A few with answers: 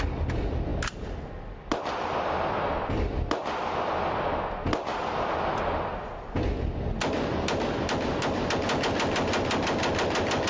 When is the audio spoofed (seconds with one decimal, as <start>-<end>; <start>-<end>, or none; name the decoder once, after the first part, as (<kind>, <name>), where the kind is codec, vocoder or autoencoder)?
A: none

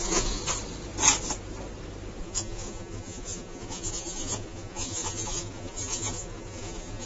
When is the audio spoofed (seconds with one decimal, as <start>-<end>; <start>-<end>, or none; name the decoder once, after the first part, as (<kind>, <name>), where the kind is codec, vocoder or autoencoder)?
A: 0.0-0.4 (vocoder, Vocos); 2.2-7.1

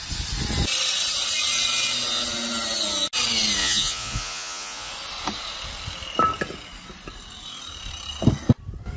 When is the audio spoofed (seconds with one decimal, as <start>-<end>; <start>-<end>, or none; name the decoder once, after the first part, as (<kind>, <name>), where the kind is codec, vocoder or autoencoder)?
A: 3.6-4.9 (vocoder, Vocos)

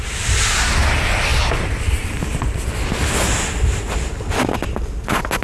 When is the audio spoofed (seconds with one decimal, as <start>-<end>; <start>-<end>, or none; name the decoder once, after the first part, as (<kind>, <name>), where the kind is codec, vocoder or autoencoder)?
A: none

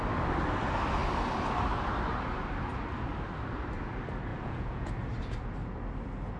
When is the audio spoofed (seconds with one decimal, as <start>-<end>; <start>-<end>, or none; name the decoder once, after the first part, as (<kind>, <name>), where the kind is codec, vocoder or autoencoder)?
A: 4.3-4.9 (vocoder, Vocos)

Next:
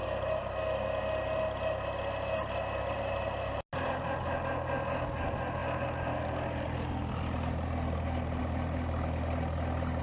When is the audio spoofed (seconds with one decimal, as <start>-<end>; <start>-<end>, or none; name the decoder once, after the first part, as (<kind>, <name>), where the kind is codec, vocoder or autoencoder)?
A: none

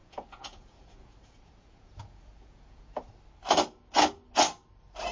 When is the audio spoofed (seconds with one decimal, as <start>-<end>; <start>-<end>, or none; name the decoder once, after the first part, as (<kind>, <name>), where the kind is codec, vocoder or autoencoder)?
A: 0.0-3.1 (vocoder, Vocos)

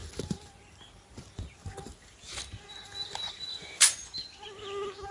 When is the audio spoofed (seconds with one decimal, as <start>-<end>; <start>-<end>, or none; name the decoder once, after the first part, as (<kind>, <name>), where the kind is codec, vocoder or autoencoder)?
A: 3.5-4.1 (vocoder, Vocos)